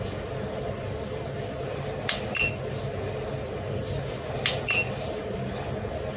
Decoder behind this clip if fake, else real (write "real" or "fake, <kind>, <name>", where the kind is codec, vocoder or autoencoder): real